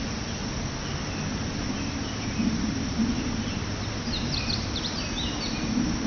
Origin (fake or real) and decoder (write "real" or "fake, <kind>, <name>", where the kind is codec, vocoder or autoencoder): real